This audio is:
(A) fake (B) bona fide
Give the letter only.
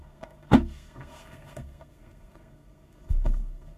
A